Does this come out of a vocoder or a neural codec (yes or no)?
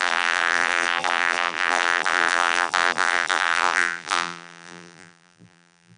yes